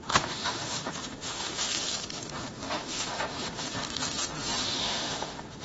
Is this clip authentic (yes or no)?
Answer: no